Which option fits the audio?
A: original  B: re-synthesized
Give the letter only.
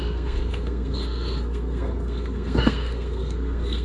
B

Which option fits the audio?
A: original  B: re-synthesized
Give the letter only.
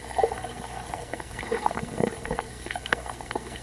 B